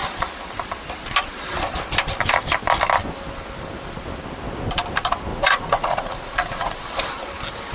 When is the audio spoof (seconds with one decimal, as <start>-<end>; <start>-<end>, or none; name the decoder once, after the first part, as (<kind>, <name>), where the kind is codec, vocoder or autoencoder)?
5.3-6.9 (vocoder, Vocos)

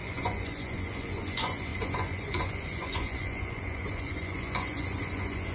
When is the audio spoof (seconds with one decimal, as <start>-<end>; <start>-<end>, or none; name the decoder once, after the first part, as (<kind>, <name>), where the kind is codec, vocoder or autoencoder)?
0.0-5.5 (vocoder, Vocos)

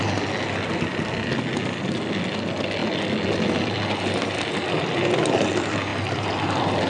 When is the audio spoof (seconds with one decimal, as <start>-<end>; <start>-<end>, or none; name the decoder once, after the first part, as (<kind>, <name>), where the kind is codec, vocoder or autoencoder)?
none

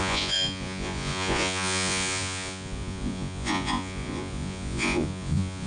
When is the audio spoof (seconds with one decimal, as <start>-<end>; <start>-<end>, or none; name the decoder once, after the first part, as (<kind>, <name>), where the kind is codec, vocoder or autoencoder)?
0.0-5.7 (vocoder, Vocos)